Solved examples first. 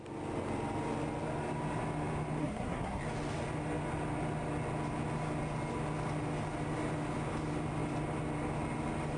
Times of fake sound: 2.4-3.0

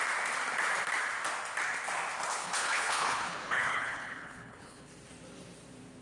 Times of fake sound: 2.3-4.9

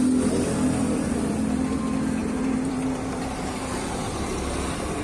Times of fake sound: none